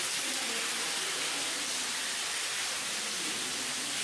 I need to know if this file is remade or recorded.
recorded